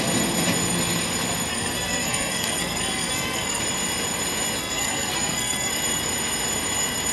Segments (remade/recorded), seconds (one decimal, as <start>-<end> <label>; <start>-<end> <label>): 0.0-1.5 recorded; 1.5-3.6 remade; 3.6-4.6 recorded; 4.6-5.7 remade; 5.7-7.1 recorded